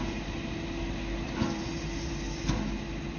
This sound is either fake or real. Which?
real